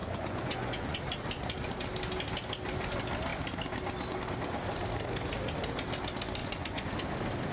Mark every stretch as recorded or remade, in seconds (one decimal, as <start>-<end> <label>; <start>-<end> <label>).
0.0-1.0 remade; 1.0-6.4 recorded; 6.4-6.9 remade; 6.9-7.5 recorded